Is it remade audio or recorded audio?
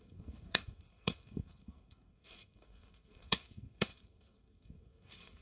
remade